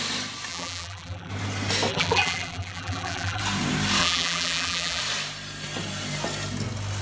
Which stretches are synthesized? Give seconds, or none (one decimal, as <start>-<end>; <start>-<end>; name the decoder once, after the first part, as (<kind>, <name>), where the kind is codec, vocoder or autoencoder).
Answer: 0.5-1.3 (vocoder, BigVGAN v2); 1.9-3.4; 4.0-5.0